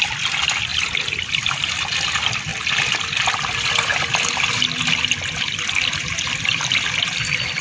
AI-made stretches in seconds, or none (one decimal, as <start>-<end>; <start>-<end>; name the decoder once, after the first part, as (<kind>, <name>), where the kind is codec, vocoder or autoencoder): none